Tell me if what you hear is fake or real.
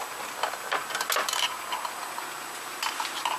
real